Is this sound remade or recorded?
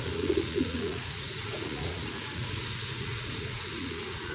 remade